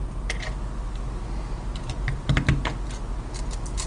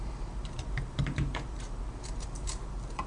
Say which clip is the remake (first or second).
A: second